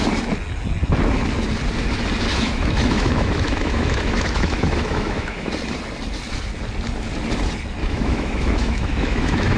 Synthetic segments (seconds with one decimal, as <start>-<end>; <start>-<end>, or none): 2.3-5.5; 7.8-9.6